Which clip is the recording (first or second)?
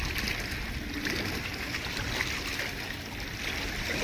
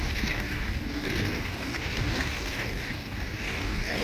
first